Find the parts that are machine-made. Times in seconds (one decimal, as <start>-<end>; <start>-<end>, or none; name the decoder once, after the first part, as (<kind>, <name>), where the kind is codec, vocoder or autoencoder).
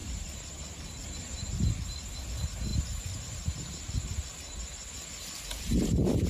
none